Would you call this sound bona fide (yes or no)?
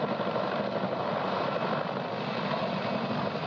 yes